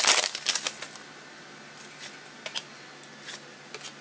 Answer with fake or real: real